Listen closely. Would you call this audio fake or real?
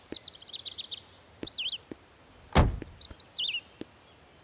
real